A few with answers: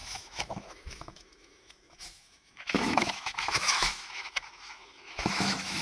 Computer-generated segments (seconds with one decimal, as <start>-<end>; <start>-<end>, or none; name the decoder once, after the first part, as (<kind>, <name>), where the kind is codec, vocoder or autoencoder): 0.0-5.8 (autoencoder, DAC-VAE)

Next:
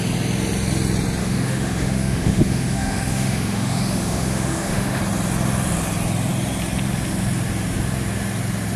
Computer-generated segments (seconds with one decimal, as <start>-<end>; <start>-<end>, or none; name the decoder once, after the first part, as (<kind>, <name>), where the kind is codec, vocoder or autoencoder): 1.2-5.0 (autoencoder, DAC-VAE)

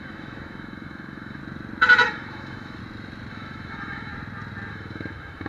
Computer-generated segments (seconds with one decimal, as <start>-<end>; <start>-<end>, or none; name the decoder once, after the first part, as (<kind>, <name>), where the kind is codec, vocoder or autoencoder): 0.0-1.4 (autoencoder, DAC-VAE); 2.0-2.8; 3.3-4.1; 4.7-5.5

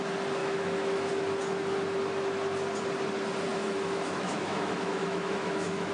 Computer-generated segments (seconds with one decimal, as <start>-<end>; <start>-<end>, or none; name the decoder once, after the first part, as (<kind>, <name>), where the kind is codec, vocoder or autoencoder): 0.4-1.1 (autoencoder, DAC-VAE); 3.5-5.9

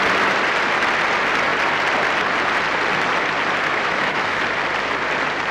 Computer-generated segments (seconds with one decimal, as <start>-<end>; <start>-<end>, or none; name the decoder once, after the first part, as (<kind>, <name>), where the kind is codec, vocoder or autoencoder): 3.7-4.4 (autoencoder, DAC-VAE)

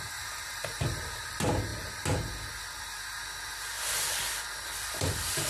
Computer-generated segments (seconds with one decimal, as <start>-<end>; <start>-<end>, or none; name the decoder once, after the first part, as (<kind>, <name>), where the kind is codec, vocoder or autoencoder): none

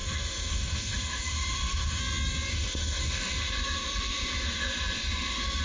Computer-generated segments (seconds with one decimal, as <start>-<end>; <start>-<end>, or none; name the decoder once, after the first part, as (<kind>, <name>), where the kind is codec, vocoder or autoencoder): 0.0-2.0 (autoencoder, DAC-VAE); 2.5-5.6